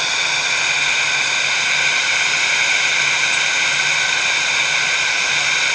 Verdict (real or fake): real